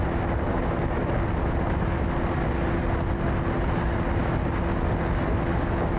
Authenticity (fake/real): real